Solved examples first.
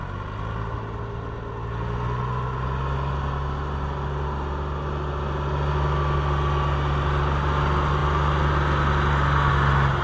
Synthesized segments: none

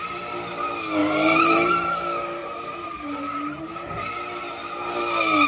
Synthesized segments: 1.0-1.7 (vocoder, BigVGAN v2); 2.4-3.6